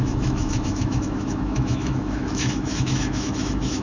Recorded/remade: remade